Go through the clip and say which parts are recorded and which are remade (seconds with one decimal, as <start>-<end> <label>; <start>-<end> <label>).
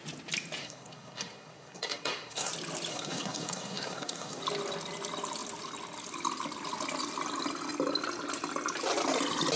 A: 0.0-0.6 recorded; 0.6-2.5 remade; 2.5-2.9 recorded; 2.9-4.4 remade; 4.4-9.6 recorded